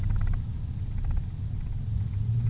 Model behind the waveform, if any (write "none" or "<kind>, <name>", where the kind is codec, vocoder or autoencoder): none